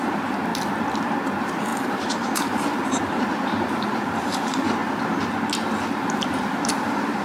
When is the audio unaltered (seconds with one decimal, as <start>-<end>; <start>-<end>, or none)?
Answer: 0.5-1.0; 4.8-5.5